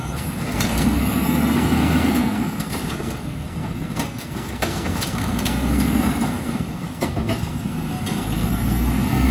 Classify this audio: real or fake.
fake